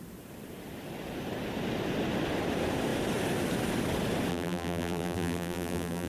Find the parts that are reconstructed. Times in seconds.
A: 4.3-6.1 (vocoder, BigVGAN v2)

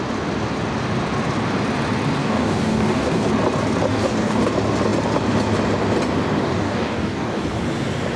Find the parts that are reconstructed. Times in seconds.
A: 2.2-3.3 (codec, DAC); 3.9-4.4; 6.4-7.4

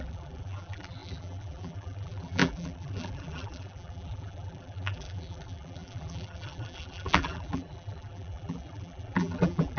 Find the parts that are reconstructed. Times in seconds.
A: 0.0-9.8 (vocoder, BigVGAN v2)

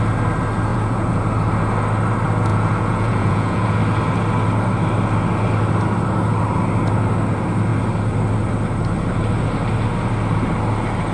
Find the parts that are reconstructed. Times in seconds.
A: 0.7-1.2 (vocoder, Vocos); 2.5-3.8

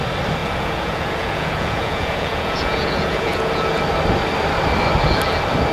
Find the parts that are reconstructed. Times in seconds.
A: 0.4-3.8 (vocoder, Vocos)